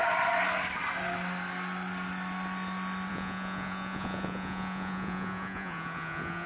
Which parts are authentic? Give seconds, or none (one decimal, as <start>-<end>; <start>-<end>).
0.0-3.1